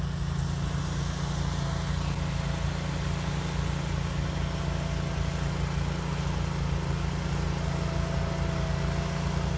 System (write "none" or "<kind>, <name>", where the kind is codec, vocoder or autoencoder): none